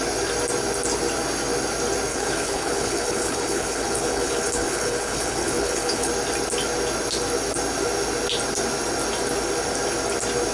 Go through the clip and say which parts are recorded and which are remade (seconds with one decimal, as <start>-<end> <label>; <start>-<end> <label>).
0.0-2.1 recorded; 2.1-6.1 remade; 6.1-10.5 recorded